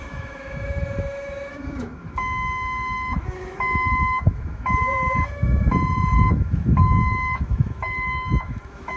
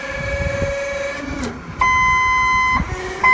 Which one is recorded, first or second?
second